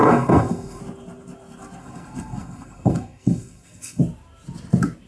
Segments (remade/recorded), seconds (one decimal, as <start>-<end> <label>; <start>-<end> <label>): 0.0-0.8 remade; 0.8-1.8 recorded; 1.8-4.0 remade; 4.0-5.1 recorded

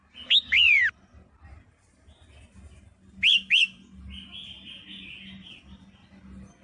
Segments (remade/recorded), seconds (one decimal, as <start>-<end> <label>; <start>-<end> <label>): 0.0-6.6 recorded